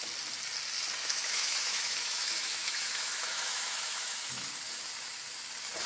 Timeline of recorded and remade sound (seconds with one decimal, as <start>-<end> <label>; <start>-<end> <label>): 0.0-1.0 recorded; 1.0-4.5 remade; 4.5-5.9 recorded